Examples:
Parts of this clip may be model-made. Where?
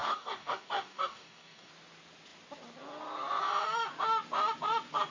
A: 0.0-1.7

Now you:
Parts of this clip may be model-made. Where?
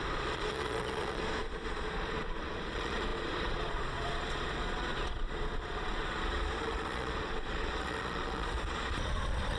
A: 0.0-9.6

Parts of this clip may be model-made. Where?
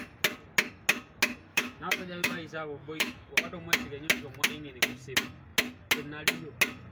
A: 1.5-3.3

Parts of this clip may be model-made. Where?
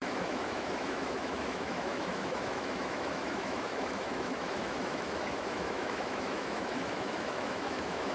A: 0.0-8.1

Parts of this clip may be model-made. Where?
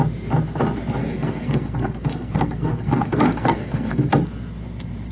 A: 1.0-4.1